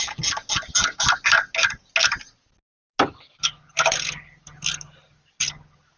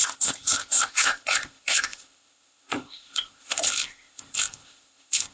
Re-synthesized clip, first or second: second